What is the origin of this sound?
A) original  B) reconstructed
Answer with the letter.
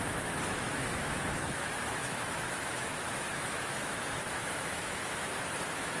B